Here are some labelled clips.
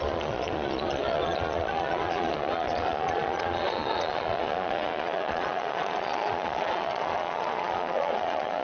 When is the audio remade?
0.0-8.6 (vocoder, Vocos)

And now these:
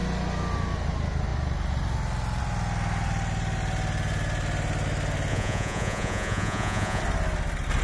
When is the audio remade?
5.3-7.0 (vocoder, Vocos)

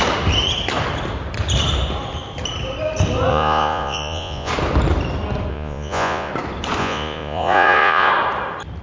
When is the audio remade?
3.3-4.5 (vocoder, Vocos); 5.5-6.3; 6.8-8.1

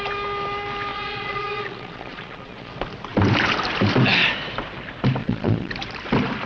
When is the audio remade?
0.9-2.7 (vocoder, Vocos); 5.2-5.7

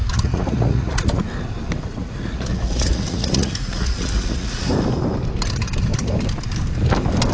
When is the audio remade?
0.0-1.2 (vocoder, Vocos); 1.9-4.7

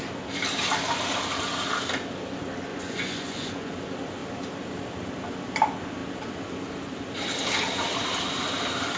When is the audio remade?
2.7-3.7 (vocoder, Vocos)